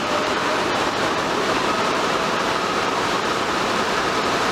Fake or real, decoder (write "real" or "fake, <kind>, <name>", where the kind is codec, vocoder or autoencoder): fake, vocoder, BigVGAN v2